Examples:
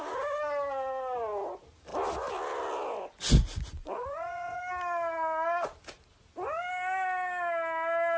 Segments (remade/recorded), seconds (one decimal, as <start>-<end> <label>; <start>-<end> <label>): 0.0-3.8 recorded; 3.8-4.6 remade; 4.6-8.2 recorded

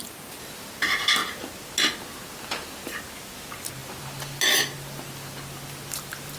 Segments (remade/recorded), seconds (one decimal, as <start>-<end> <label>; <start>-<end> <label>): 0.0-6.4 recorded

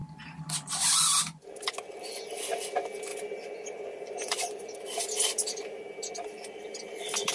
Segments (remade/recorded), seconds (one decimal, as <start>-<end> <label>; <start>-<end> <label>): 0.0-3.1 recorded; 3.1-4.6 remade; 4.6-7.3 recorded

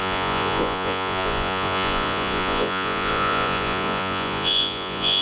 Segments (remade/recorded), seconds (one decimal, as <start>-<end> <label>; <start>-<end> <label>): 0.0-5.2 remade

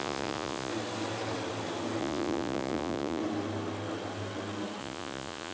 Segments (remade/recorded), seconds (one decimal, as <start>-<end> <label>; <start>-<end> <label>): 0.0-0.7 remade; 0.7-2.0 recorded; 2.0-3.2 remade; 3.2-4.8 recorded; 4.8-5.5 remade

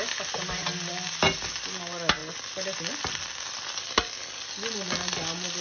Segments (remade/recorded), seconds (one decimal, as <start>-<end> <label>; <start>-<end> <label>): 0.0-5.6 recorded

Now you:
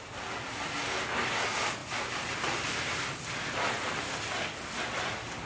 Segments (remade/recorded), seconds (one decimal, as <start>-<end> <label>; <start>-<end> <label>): 0.0-5.5 recorded

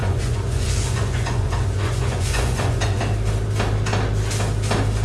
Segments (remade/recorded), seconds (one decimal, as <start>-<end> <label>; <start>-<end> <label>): 0.0-3.0 remade; 3.0-5.0 recorded